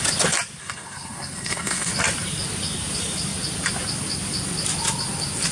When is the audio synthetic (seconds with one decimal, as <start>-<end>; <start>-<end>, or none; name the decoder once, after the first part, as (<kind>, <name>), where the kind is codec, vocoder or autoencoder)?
0.6-1.9 (codec, SNAC)